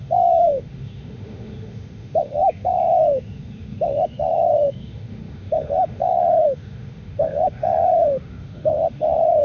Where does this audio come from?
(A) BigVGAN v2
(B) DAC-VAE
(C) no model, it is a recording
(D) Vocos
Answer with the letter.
B